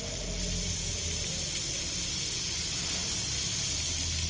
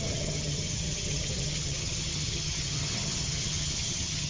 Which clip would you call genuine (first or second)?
first